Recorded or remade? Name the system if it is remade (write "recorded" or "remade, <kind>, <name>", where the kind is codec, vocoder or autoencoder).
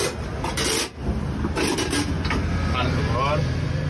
recorded